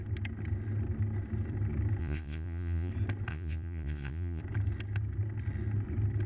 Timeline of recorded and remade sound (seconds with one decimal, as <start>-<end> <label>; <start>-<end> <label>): 0.0-2.0 recorded; 2.0-2.9 remade; 2.9-3.3 recorded; 3.3-4.4 remade; 4.4-6.3 recorded